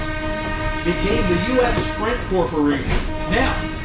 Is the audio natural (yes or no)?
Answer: yes